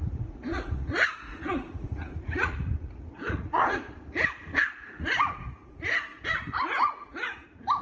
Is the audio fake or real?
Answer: fake